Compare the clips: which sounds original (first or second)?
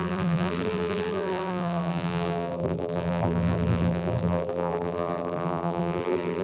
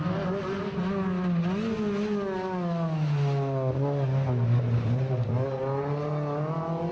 second